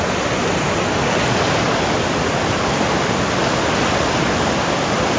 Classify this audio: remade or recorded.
recorded